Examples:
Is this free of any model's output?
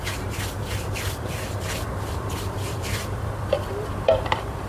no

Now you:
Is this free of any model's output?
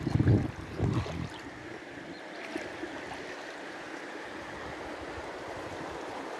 yes